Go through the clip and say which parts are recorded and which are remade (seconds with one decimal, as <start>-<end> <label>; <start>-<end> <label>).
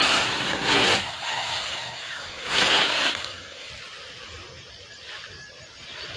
0.0-3.7 remade; 3.7-6.2 recorded